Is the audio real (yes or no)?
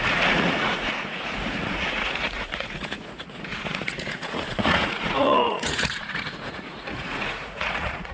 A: no